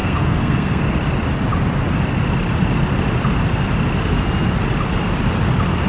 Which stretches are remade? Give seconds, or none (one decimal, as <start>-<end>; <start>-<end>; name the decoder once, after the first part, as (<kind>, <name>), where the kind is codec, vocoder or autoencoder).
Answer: 0.0-0.8 (codec, SNAC)